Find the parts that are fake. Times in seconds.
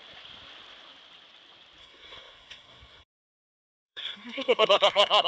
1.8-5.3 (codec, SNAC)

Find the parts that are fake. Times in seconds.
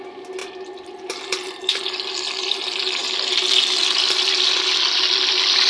none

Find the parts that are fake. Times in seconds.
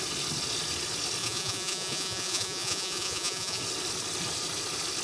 1.2-3.6 (vocoder, Vocos)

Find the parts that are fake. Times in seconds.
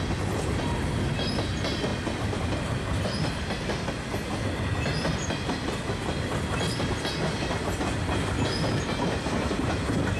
none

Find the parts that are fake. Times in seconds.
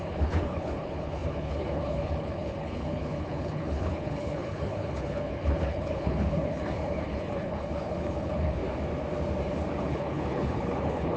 0.0-8.6 (codec, HILCodec); 9.8-11.2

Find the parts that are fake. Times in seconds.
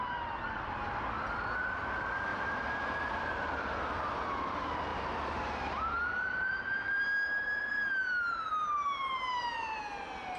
2.3-3.6 (vocoder, BigVGAN v2); 4.9-9.8